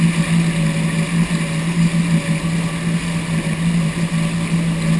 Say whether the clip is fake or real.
real